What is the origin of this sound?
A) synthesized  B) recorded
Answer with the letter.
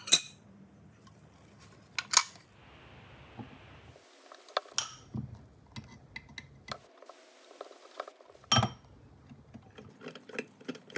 B